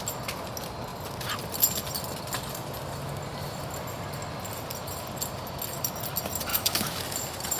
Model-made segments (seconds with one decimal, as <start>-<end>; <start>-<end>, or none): 6.5-7.0